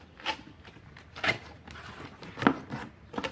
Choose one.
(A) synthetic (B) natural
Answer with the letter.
B